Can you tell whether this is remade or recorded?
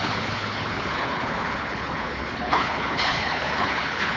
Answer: remade